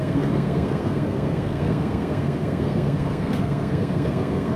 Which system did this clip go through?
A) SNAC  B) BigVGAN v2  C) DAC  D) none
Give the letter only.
A